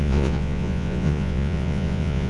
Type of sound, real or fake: fake